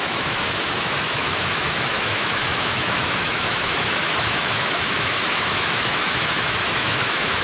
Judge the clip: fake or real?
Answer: fake